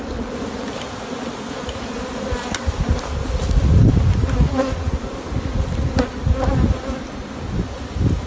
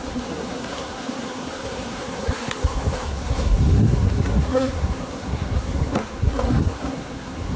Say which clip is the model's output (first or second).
second